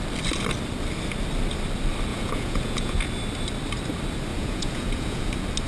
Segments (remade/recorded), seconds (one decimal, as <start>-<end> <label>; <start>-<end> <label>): 0.0-2.1 recorded; 2.1-3.0 remade; 3.0-4.3 recorded; 4.3-5.3 remade; 5.3-5.7 recorded

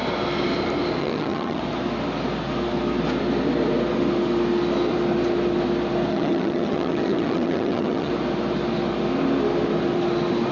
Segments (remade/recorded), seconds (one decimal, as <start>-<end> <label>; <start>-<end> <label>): 0.0-1.0 recorded; 1.0-1.6 remade; 1.6-6.1 recorded; 6.1-8.1 remade; 8.1-10.5 recorded